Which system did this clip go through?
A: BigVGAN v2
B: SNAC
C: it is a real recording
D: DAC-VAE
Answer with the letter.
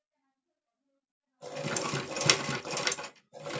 C